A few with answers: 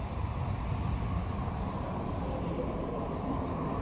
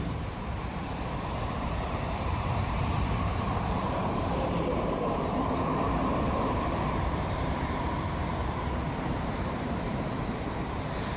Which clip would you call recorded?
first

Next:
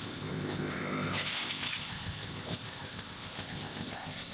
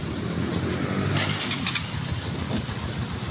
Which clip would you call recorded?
second